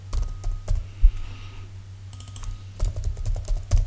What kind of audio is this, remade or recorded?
recorded